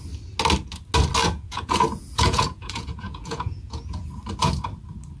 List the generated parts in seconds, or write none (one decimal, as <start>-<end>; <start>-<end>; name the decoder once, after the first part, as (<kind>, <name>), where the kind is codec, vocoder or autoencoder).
1.2-4.1 (vocoder, Vocos)